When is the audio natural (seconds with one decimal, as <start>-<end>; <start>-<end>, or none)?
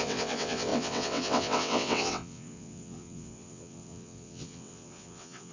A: none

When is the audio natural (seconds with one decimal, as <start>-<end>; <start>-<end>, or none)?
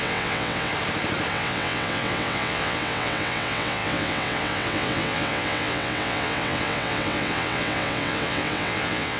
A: 0.7-1.3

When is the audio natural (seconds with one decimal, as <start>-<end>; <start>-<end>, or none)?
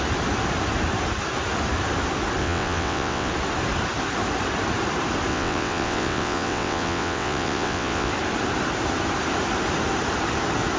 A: 0.0-2.4; 3.3-5.3; 8.1-10.8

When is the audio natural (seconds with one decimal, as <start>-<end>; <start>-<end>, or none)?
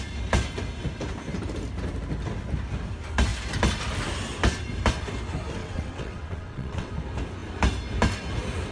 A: 0.0-5.6; 6.9-8.7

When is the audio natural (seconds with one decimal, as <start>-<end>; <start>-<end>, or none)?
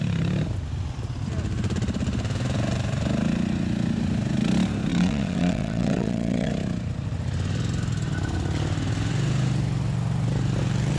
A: 0.0-4.9; 6.5-11.0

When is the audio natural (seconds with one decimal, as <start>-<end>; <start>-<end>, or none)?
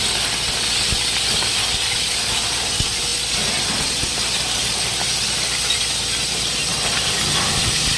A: 0.0-8.0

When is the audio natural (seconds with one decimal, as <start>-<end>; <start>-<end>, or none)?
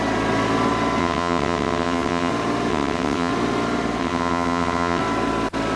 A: 0.0-1.0; 2.3-2.7; 3.3-4.0; 5.0-5.8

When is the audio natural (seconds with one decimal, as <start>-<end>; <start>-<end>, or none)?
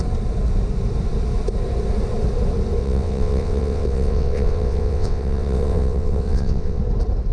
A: 0.0-2.8; 6.8-7.3